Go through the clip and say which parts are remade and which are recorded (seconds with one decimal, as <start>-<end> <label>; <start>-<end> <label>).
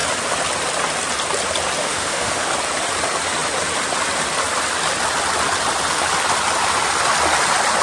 0.0-1.8 recorded; 1.8-2.5 remade; 2.5-7.8 recorded